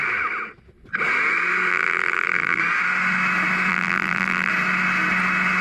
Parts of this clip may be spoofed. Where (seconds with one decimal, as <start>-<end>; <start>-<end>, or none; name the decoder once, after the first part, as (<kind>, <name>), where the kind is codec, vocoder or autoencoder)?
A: 1.7-2.6 (vocoder, BigVGAN v2); 3.7-4.5